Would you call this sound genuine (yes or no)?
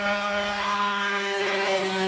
no